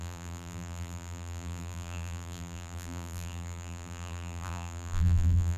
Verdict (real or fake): fake